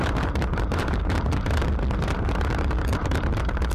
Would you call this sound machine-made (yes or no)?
yes